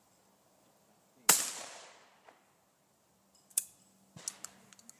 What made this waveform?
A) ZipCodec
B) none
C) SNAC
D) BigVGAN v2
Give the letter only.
B